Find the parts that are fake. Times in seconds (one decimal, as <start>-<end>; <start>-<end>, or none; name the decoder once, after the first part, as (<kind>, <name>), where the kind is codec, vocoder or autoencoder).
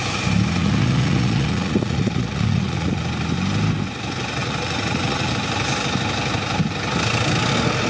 0.6-3.0 (vocoder, Vocos); 4.4-5.3